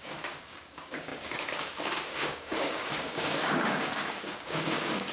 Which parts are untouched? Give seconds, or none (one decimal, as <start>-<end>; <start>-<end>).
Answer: none